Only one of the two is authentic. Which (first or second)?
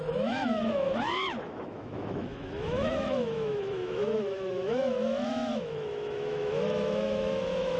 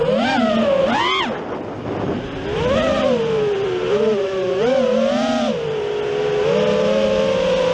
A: second